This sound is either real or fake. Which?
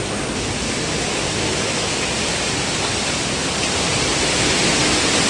real